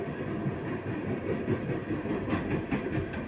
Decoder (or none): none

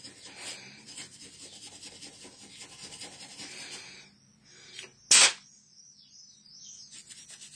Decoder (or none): none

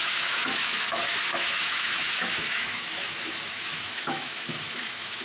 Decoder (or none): autoencoder, DAC-VAE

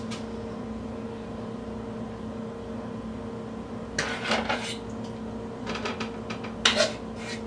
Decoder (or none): none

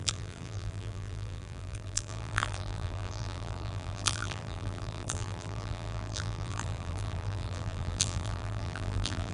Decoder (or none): vocoder, BigVGAN v2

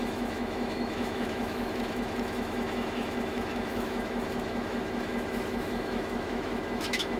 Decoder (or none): autoencoder, DAC-VAE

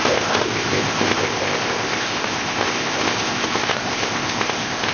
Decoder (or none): codec, ZipCodec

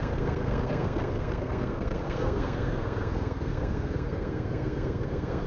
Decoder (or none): codec, SNAC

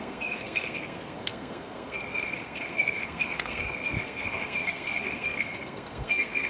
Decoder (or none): codec, SNAC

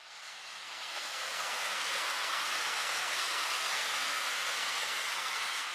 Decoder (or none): codec, SNAC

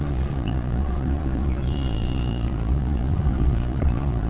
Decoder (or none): vocoder, Vocos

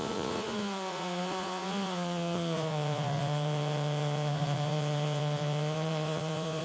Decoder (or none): vocoder, Vocos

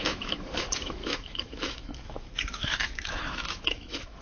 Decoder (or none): autoencoder, DAC-VAE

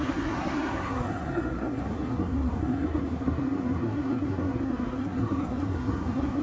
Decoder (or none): codec, SNAC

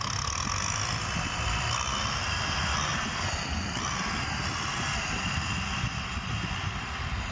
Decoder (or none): none